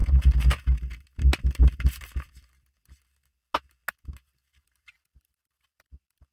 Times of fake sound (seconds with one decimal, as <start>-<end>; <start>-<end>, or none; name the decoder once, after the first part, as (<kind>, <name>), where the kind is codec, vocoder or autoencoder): 1.0-1.6 (vocoder, BigVGAN v2); 4.6-6.3